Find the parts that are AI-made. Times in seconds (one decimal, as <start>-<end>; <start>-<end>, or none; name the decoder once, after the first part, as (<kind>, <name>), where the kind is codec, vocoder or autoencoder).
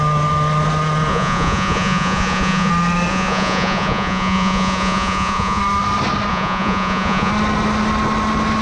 1.1-2.7 (vocoder, Vocos); 3.1-5.6; 6.3-7.3